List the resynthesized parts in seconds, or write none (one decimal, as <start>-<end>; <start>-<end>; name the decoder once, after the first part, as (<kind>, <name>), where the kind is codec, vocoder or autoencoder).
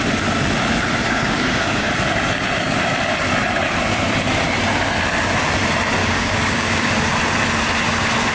1.0-1.9 (codec, DAC); 6.0-6.9